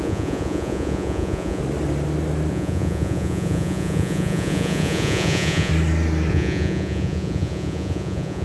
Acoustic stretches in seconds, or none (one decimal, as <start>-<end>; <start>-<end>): 1.6-2.5; 5.7-6.3